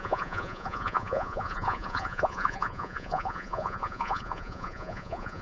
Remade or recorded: remade